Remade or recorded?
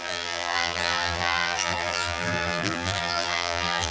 remade